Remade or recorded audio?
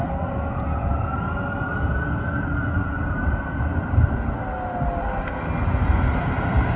recorded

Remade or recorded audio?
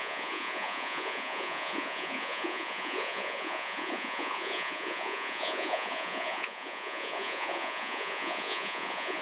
remade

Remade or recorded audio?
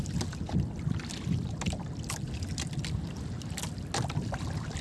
recorded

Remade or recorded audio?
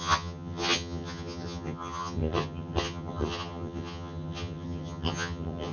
remade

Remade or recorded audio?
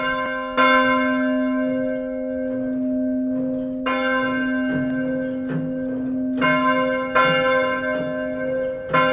recorded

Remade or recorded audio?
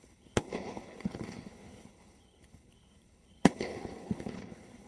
remade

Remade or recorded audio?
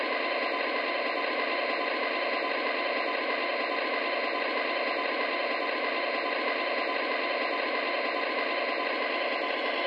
recorded